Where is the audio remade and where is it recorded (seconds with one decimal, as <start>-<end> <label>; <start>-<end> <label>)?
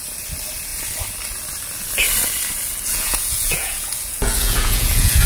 0.0-2.9 recorded; 2.9-5.3 remade